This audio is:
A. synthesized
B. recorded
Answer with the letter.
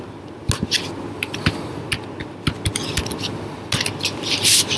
B